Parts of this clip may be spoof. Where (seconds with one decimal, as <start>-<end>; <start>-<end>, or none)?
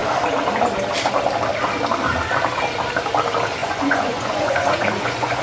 3.6-5.4